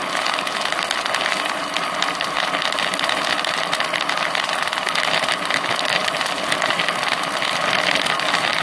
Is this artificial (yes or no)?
no